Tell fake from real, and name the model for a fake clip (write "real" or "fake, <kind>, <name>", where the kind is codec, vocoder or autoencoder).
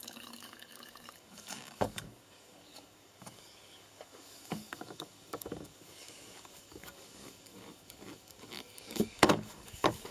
fake, codec, DAC